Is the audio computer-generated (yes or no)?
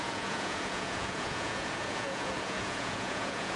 yes